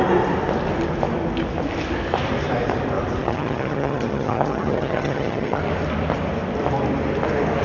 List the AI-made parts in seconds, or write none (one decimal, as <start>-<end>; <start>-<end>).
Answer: 3.2-5.6